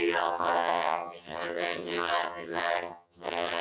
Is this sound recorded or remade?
remade